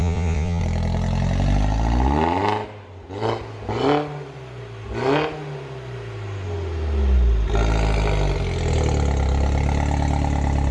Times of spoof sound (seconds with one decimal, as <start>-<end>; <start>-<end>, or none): 0.0-0.6